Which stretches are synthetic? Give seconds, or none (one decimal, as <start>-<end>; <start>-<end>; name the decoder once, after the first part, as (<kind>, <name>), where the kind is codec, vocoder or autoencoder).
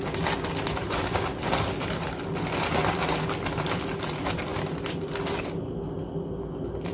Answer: none